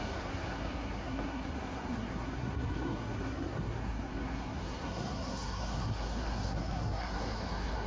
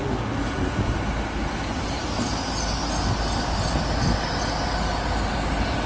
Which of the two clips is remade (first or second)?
first